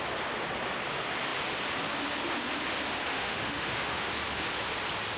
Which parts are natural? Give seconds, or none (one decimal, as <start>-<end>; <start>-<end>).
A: 0.0-3.1; 4.1-5.2